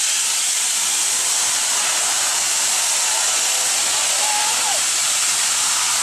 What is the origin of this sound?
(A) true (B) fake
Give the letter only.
A